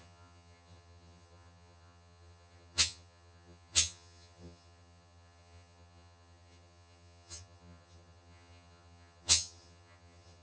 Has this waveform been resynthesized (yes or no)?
yes